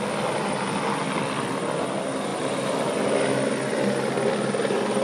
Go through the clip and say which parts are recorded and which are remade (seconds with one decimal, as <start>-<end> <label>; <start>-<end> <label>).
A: 0.0-5.0 recorded